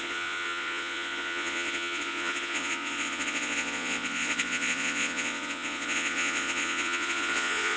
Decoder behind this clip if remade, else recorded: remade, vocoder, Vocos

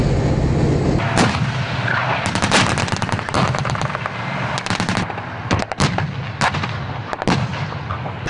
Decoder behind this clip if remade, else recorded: recorded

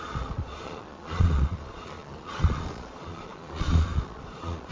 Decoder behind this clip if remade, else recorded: remade, vocoder, Vocos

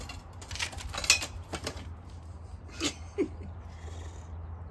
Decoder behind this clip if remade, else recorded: recorded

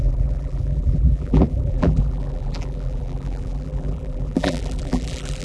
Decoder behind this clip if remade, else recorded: remade, vocoder, BigVGAN v2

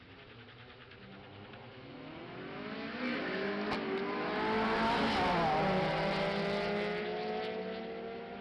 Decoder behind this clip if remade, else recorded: recorded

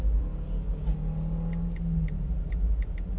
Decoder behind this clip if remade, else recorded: recorded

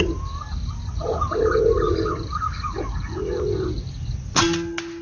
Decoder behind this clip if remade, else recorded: recorded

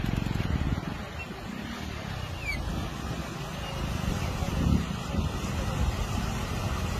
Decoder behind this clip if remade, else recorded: recorded